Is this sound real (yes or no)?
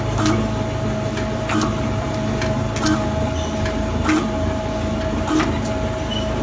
yes